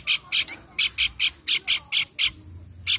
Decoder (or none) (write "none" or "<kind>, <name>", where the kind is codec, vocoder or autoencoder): none